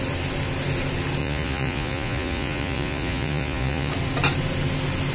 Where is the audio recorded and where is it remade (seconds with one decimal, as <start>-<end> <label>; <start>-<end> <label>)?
0.0-1.2 recorded; 1.2-3.9 remade; 3.9-5.1 recorded

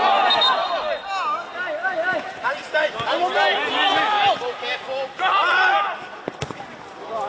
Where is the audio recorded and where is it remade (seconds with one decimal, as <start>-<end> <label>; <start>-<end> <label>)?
0.0-1.8 recorded; 1.8-2.9 remade; 2.9-7.3 recorded

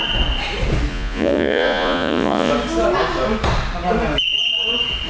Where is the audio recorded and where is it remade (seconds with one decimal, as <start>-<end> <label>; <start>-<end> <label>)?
0.0-0.9 recorded; 0.9-2.5 remade; 2.5-5.1 recorded

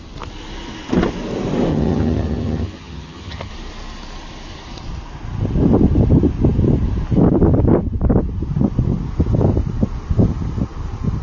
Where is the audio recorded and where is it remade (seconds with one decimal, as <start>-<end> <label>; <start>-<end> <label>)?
0.0-1.7 recorded; 1.7-3.5 remade; 3.5-11.2 recorded

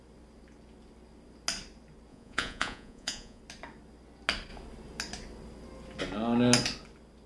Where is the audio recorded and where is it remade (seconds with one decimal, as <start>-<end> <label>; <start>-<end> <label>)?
0.0-2.1 recorded; 2.1-3.4 remade; 3.4-7.3 recorded